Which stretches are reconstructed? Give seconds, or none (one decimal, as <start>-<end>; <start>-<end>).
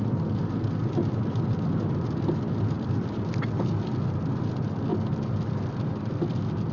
none